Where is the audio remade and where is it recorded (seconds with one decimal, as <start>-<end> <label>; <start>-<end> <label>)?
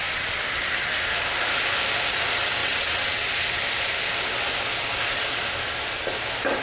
0.0-2.6 recorded; 2.6-3.3 remade; 3.3-6.6 recorded